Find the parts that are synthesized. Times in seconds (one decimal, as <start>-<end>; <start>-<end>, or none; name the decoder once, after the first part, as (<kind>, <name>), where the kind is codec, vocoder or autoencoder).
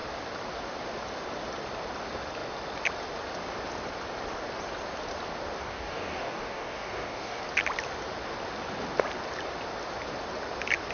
5.6-7.4 (codec, DAC)